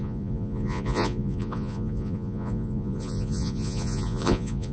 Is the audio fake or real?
fake